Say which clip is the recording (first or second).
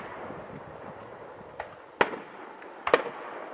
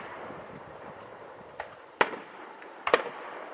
first